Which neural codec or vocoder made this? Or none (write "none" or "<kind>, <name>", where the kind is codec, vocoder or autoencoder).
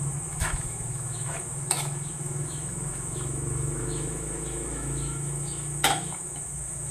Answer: autoencoder, DAC-VAE